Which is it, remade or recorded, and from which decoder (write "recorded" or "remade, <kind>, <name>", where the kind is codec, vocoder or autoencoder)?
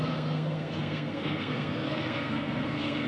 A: remade, codec, SNAC